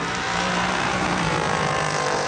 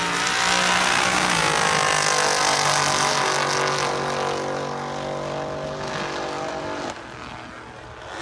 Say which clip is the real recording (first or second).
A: second